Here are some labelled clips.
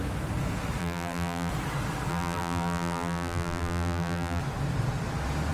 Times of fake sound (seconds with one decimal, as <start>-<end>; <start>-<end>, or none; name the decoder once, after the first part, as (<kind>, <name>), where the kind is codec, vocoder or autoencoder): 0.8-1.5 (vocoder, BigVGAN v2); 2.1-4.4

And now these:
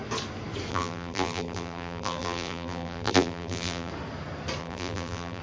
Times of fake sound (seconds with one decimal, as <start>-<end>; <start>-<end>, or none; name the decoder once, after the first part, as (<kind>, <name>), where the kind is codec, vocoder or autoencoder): 0.7-3.9 (vocoder, BigVGAN v2); 4.6-5.4

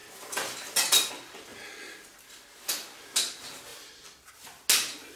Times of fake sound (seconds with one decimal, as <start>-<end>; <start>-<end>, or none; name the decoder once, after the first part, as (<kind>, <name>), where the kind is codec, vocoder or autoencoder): 0.0-1.1 (vocoder, BigVGAN v2); 3.7-4.3